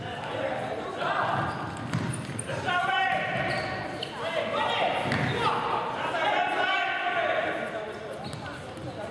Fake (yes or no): no